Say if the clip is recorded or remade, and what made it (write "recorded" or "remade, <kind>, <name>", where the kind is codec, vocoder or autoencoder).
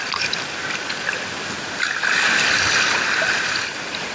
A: remade, vocoder, BigVGAN v2